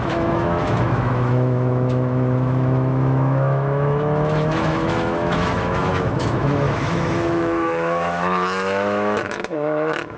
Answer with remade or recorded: remade